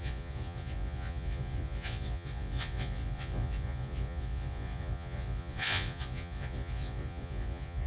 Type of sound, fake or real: fake